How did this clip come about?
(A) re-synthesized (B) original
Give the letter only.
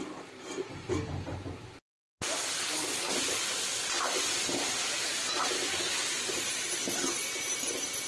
B